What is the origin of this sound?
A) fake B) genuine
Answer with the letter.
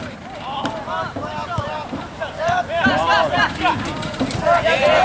A